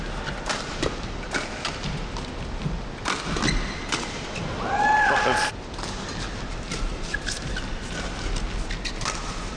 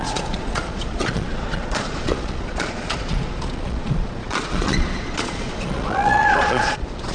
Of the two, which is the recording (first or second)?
first